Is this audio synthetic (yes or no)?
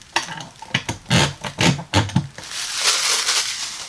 no